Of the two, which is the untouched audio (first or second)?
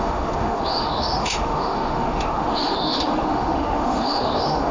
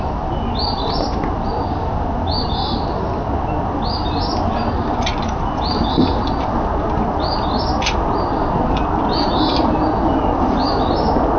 second